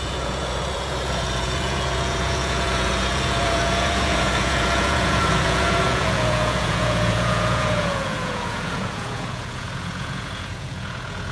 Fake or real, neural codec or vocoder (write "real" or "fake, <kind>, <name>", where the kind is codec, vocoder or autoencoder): fake, vocoder, Vocos